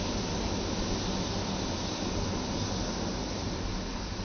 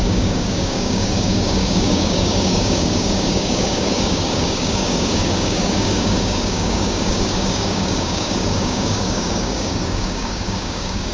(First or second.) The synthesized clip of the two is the second